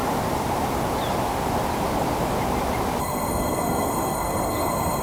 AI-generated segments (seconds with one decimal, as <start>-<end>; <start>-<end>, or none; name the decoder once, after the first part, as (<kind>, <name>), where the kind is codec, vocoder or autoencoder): 3.0-5.0 (codec, SNAC)

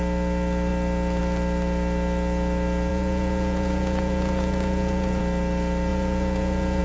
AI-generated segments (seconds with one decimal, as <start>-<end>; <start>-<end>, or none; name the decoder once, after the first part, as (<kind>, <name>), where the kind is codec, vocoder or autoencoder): 2.9-5.2 (vocoder, Vocos); 5.9-6.8

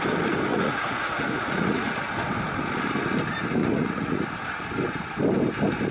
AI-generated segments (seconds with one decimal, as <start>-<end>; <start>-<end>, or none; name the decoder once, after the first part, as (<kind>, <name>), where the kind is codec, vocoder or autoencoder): 0.5-2.1 (vocoder, Vocos); 3.6-4.2

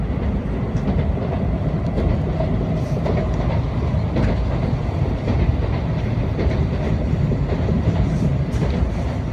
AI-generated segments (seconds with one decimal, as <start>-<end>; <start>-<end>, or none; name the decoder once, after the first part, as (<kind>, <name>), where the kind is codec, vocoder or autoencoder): none

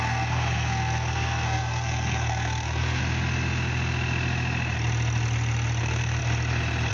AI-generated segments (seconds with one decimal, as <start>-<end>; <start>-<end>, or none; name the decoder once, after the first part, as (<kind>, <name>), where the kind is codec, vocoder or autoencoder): 0.0-3.0 (codec, SNAC); 5.8-6.2

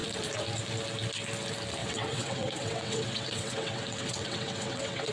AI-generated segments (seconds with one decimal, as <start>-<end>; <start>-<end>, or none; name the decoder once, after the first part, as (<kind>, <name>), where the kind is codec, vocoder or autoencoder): 1.8-5.1 (vocoder, WaveNeXt)